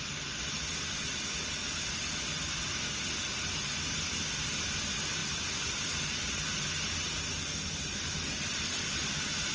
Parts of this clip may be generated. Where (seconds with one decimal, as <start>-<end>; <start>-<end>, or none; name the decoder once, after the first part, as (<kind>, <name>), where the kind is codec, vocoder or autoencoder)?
none